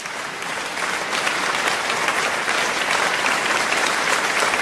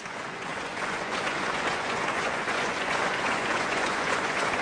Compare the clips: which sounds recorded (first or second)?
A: first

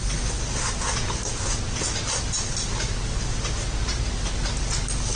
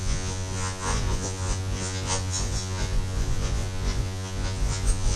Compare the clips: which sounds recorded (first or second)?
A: first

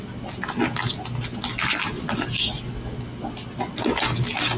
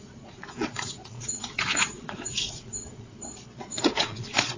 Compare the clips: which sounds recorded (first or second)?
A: first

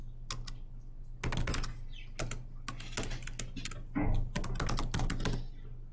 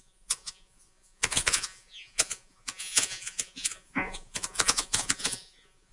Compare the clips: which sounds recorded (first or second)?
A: first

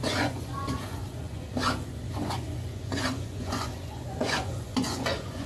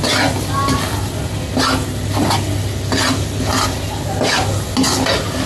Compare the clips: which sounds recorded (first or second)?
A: second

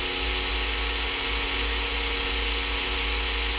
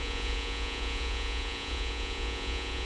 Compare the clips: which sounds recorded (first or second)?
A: first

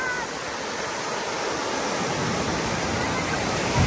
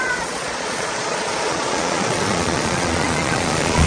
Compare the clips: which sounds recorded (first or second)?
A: first